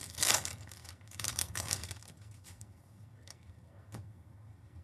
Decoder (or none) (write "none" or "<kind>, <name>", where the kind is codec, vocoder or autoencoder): codec, SNAC